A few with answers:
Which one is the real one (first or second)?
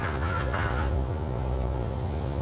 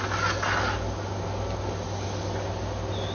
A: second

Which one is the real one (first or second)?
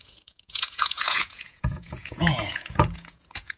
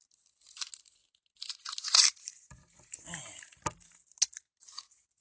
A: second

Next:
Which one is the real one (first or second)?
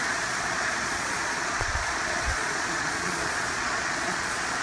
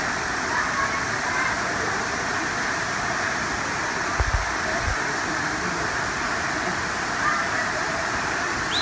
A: second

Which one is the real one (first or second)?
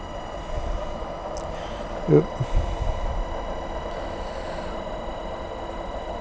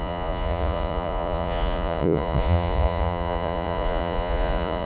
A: first